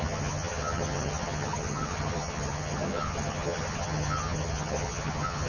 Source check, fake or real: fake